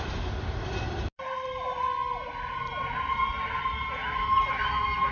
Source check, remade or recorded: recorded